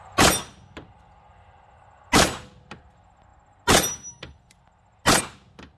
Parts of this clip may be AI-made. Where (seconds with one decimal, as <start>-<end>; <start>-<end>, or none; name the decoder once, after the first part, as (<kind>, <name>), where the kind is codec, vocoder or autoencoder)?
none